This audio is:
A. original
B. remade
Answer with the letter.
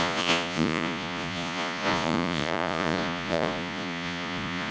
B